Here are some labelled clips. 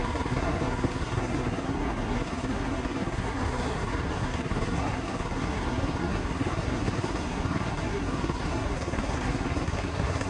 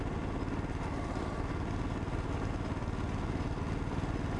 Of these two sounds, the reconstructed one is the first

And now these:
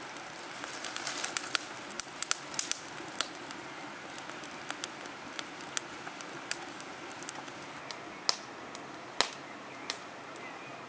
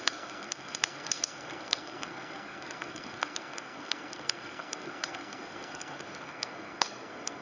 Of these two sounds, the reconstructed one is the second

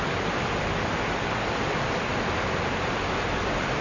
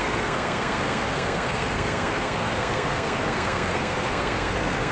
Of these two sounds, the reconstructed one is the second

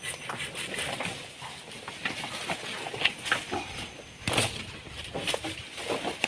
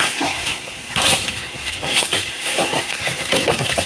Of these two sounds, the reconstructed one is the second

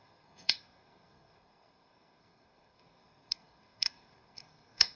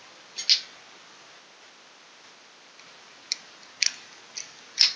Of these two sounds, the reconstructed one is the first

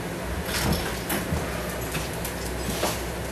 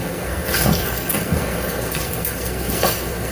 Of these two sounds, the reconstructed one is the second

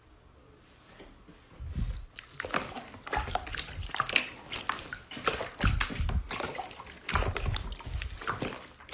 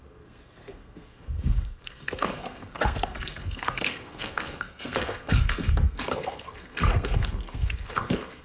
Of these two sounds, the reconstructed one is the second